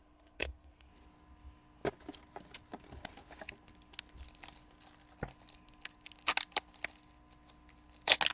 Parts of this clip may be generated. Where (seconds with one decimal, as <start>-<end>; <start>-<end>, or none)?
0.0-0.9